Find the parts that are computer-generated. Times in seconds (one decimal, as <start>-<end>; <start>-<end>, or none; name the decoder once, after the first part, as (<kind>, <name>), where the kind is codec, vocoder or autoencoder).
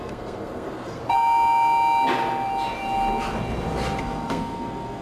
0.0-1.0 (codec, SNAC); 4.0-5.0